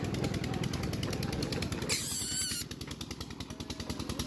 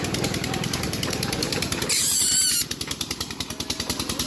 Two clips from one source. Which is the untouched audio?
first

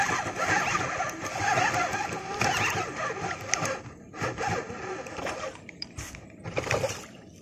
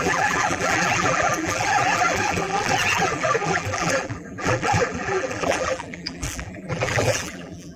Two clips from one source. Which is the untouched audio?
first